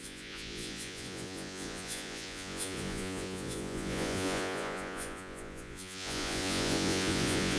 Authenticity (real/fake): fake